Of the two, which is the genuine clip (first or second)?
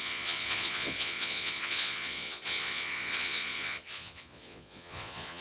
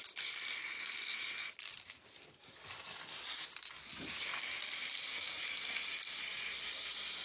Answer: second